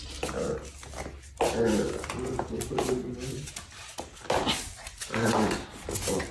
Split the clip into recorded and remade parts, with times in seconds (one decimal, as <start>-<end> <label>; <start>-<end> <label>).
0.0-3.0 recorded; 3.0-3.9 remade; 3.9-6.3 recorded